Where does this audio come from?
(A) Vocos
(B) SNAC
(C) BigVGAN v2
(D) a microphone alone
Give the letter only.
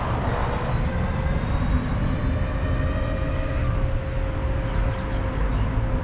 D